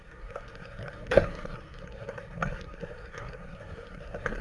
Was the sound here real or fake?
fake